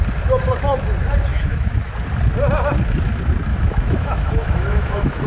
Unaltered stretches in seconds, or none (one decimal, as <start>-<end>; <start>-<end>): 0.0-1.3; 1.9-3.5